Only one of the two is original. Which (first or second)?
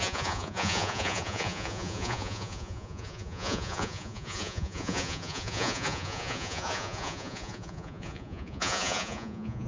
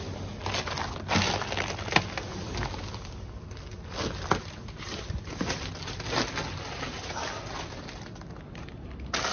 second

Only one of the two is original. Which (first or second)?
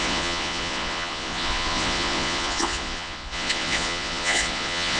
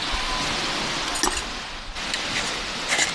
second